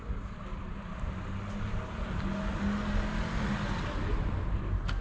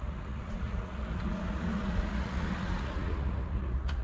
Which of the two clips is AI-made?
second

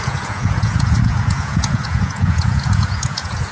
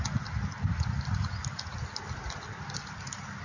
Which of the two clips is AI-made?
first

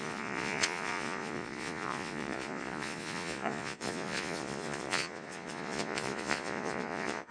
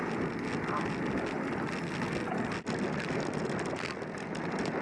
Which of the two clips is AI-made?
first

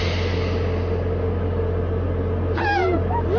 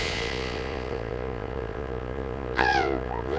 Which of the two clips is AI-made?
second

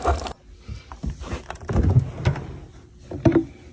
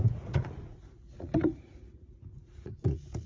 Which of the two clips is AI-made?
second